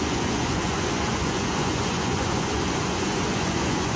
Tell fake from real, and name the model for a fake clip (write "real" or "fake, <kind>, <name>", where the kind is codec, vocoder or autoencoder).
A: fake, vocoder, Vocos